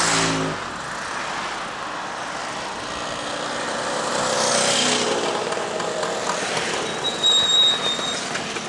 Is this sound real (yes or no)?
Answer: yes